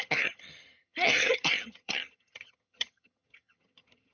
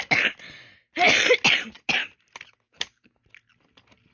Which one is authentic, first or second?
second